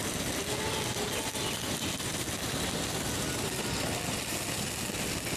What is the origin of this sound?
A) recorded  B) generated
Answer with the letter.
A